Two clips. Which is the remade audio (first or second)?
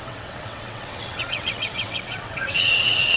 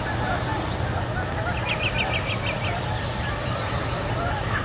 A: first